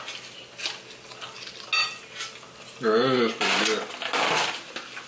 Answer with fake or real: real